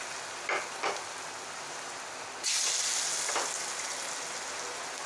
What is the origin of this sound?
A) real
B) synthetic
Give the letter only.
A